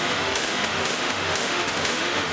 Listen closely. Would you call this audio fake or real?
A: fake